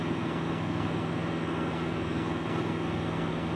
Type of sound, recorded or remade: remade